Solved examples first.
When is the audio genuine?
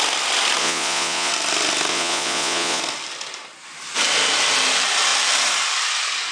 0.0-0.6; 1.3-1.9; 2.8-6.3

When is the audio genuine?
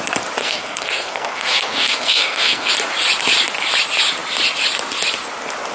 0.0-0.4; 2.7-5.7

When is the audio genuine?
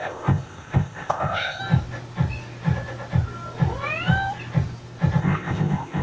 1.6-5.2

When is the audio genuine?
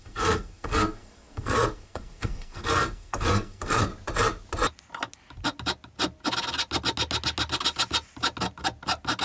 3.9-9.2